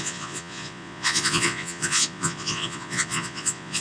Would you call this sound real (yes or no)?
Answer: no